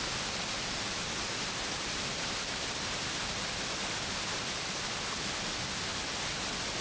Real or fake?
fake